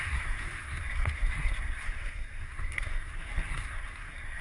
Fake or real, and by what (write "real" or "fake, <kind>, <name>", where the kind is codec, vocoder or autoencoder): fake, codec, SNAC